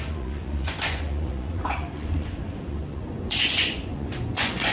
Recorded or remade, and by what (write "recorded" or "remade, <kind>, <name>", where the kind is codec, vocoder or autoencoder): remade, vocoder, Vocos